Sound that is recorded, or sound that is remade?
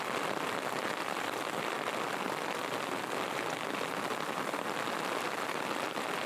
recorded